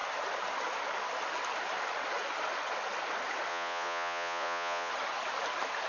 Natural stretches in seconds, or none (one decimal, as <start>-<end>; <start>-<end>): 0.0-3.5; 4.9-5.9